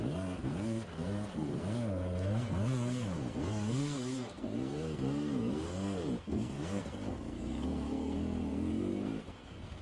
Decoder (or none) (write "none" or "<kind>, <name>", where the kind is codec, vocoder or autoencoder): codec, SNAC